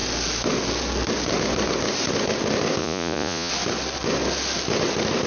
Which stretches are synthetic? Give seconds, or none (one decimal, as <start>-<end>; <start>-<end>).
2.8-3.5